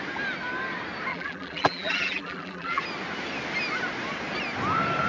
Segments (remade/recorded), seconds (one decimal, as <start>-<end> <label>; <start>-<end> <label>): 0.0-1.1 recorded; 1.1-2.8 remade; 2.8-5.1 recorded